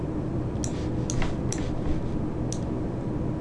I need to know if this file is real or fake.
real